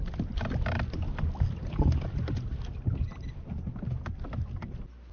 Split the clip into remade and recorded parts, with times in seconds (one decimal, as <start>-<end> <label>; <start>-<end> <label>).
0.0-5.1 recorded